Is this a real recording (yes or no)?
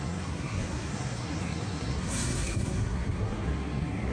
no